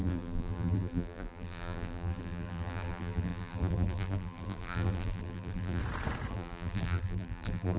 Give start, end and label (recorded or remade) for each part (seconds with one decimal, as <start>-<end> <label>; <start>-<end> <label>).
0.0-5.8 remade; 5.8-6.3 recorded; 6.3-7.8 remade